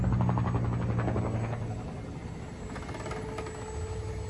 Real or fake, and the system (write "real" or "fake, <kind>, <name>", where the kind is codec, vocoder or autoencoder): real